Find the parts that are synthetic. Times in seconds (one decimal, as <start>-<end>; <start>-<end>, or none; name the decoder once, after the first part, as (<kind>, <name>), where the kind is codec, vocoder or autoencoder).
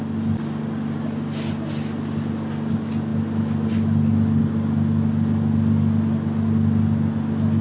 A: none